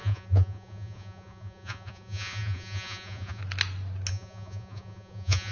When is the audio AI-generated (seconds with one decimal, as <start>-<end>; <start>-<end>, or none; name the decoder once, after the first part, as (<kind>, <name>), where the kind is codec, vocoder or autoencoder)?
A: 0.0-3.4 (vocoder, Vocos); 4.1-5.5